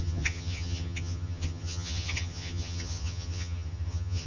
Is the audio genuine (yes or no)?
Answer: no